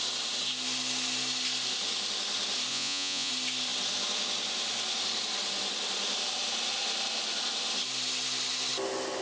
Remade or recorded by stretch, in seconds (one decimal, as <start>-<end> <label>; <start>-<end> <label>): 0.0-2.7 recorded; 2.7-3.3 remade; 3.3-9.2 recorded